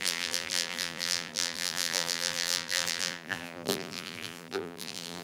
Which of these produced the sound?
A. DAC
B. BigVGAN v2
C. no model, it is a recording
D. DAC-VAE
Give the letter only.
B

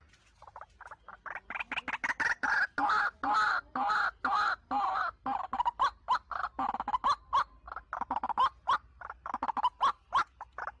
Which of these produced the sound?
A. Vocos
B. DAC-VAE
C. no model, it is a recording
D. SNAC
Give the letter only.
C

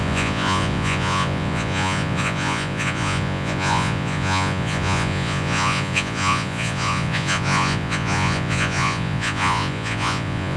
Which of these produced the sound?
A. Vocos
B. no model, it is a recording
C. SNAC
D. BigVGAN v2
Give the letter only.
A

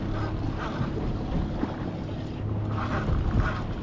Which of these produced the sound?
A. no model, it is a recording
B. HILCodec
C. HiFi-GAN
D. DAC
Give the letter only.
A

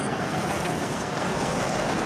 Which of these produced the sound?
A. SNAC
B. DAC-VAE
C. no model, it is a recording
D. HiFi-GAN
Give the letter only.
A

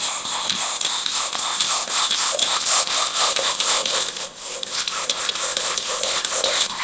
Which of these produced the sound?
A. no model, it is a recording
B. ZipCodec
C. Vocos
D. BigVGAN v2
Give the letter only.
B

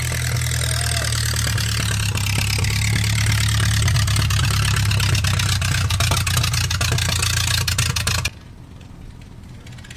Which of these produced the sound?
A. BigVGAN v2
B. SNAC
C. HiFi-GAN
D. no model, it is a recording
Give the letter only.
D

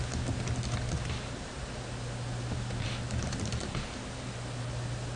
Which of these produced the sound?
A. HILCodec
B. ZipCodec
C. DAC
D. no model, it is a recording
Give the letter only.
D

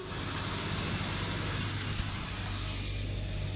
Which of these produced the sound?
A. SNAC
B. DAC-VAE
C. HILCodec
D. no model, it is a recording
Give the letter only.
D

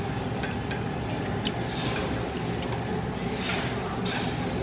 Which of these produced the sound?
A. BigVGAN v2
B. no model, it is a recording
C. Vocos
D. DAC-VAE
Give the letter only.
B